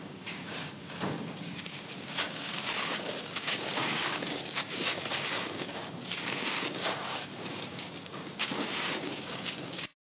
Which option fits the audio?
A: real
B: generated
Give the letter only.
B